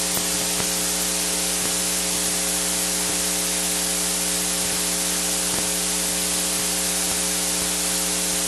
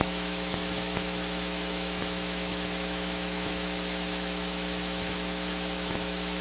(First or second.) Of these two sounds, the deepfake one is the second